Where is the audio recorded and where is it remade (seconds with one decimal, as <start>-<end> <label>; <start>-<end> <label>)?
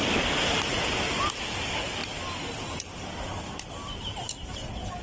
0.0-5.0 recorded